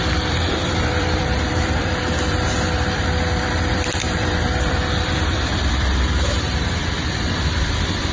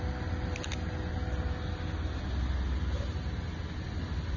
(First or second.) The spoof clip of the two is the first